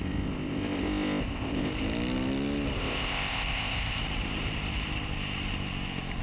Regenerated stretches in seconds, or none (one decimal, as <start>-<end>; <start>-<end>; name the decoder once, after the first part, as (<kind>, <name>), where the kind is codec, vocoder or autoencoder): 0.0-1.7 (codec, ZipCodec); 2.8-4.0